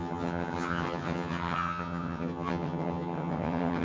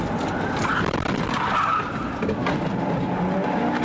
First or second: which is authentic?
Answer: second